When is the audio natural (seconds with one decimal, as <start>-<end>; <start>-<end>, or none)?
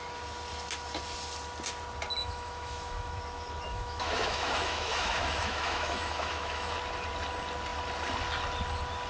0.0-2.2; 3.2-3.7; 6.7-9.1